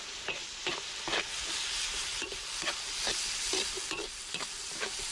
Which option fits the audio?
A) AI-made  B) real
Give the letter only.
B